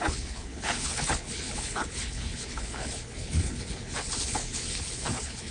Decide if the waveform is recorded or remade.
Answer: remade